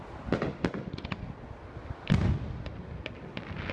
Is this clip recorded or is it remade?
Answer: recorded